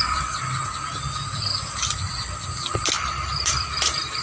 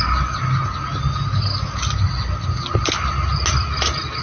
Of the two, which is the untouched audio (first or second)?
second